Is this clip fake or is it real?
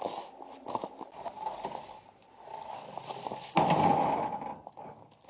real